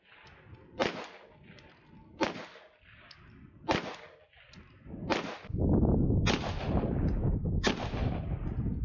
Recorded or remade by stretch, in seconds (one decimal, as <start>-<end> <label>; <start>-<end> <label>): 0.0-7.2 recorded; 7.2-7.7 remade; 7.7-8.8 recorded